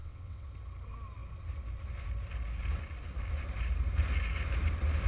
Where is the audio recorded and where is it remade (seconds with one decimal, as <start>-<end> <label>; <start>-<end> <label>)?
0.0-0.5 remade; 0.5-5.1 recorded